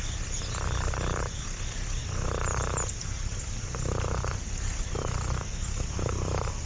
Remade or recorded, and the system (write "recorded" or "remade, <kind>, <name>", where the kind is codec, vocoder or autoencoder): recorded